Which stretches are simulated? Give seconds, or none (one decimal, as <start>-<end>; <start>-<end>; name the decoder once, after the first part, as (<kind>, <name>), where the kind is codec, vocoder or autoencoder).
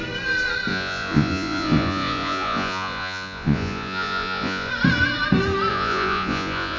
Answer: 0.7-4.7 (vocoder, Vocos); 5.7-6.8